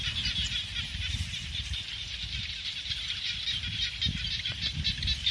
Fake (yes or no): no